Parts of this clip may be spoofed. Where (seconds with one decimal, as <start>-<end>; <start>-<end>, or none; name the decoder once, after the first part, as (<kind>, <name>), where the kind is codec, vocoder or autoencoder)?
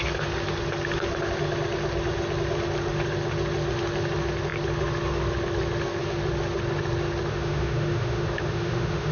7.3-9.1 (autoencoder, DAC-VAE)